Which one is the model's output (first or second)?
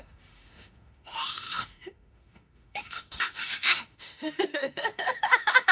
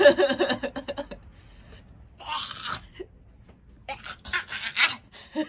first